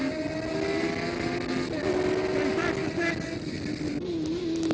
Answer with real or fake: real